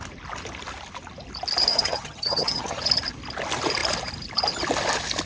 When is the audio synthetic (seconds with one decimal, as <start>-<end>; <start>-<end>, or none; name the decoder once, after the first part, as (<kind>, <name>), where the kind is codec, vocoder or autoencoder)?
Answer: 1.7-2.8 (vocoder, HiFi-GAN)